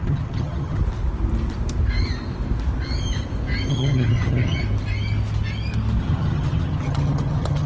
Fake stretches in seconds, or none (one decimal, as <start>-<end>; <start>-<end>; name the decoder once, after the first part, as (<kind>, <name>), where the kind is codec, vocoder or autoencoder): 0.0-0.8 (vocoder, HiFi-GAN); 3.7-4.6; 6.0-7.7